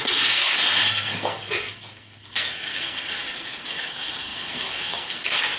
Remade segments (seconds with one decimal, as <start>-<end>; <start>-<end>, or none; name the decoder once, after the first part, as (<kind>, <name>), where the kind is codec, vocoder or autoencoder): 0.0-5.6 (codec, SNAC)